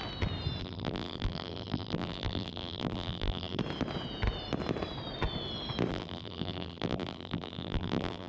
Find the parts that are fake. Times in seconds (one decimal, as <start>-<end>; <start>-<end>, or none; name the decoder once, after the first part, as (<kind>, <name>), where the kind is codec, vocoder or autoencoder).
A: 0.6-3.6 (vocoder, BigVGAN v2); 5.9-8.3